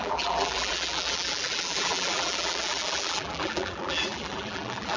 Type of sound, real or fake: fake